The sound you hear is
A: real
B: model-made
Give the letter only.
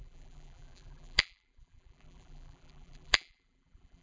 B